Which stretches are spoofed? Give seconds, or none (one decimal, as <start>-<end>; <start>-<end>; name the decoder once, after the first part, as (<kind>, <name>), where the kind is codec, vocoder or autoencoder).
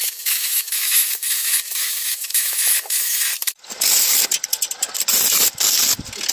0.0-3.3 (autoencoder, DAC-VAE)